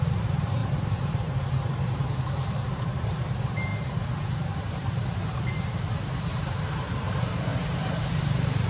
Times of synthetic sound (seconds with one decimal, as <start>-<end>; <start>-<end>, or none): 0.0-8.7

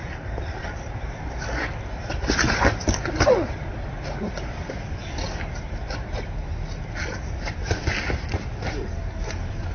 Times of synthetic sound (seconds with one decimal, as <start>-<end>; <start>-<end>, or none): 0.0-4.9

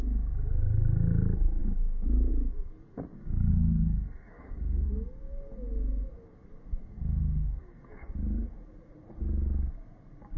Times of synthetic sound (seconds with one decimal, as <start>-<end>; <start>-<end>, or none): 3.5-4.9; 6.8-8.1

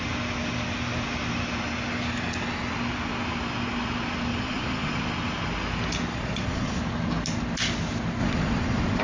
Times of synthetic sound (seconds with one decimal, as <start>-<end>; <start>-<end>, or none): 4.3-5.0; 6.1-6.8; 8.2-9.0

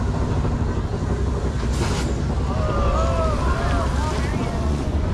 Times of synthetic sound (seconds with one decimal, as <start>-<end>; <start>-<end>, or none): 4.3-5.1